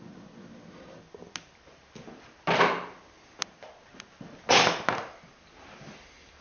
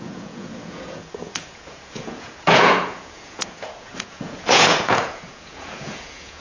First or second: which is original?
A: first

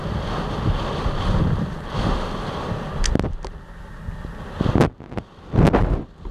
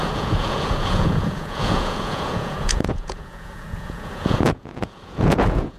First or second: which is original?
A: first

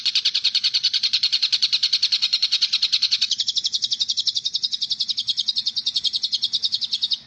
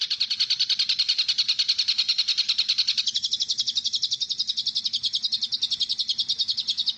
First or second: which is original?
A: second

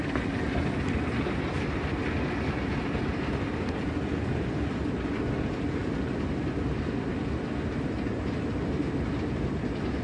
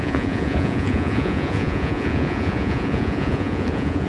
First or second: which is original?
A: first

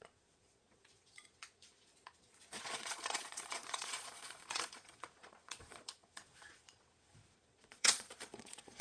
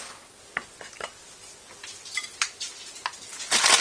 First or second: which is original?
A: second